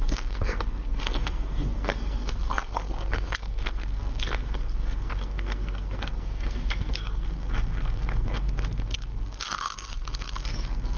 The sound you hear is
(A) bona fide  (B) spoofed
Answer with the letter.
B